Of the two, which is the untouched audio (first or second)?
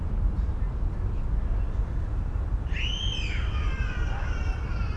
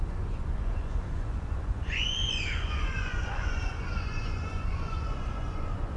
first